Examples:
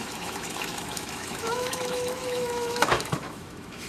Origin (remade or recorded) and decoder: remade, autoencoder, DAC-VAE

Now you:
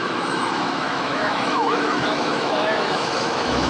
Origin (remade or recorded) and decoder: remade, autoencoder, DAC-VAE